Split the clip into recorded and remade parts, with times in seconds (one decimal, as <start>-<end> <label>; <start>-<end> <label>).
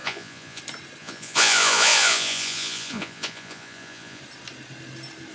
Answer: 0.0-0.6 remade; 0.6-1.0 recorded; 1.0-4.2 remade; 4.2-5.3 recorded